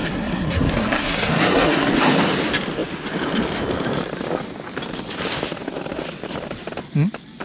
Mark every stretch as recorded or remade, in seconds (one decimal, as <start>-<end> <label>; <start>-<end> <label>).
0.0-1.9 remade; 1.9-7.4 recorded